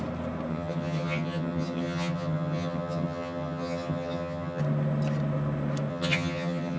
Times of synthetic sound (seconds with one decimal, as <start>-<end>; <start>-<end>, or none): 0.5-4.6; 5.9-6.8